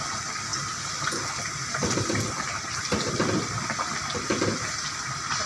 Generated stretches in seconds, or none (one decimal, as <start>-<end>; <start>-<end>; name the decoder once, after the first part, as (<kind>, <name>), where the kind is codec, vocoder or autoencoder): none